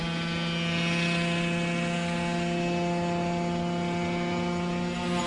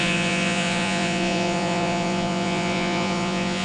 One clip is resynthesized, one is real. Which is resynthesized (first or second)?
second